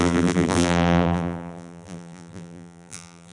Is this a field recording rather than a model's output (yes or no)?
no